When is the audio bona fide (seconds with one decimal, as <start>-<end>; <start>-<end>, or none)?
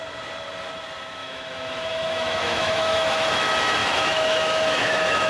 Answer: 0.0-1.2; 3.3-3.8